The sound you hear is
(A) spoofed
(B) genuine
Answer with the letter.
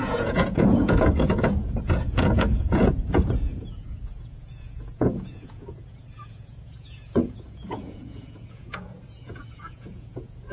A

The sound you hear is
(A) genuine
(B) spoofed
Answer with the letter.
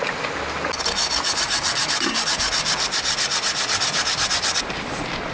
A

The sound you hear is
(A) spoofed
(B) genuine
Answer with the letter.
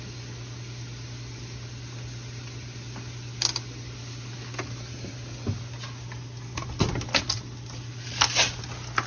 B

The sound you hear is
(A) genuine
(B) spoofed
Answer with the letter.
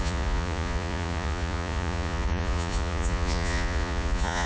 B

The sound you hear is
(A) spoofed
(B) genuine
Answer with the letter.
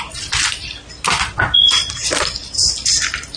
B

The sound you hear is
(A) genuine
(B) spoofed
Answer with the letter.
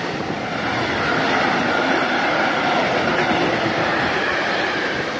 A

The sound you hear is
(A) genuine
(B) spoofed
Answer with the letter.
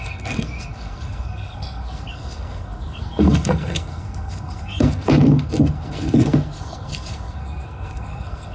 B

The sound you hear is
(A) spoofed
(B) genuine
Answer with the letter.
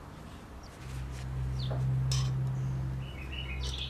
B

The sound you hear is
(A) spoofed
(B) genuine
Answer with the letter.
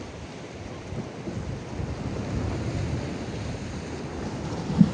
B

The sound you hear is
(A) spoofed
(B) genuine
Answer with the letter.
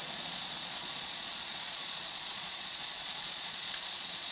A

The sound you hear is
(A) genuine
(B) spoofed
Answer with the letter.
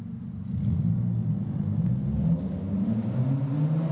A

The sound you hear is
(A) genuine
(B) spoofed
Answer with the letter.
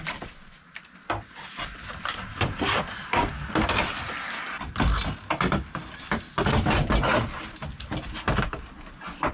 A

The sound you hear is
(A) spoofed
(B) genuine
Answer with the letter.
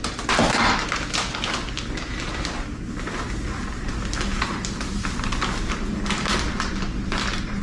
B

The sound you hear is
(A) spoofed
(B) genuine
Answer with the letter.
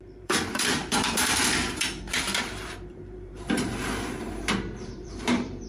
A